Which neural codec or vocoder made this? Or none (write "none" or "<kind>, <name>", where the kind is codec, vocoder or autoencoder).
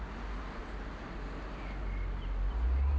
none